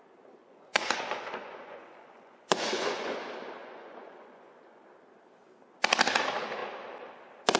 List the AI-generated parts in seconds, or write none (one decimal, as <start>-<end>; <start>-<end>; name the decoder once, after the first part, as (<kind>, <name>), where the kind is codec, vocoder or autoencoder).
0.4-3.2 (vocoder, Vocos); 3.6-4.8